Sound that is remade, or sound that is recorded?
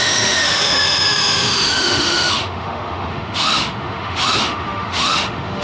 remade